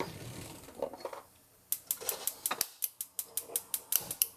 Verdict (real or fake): real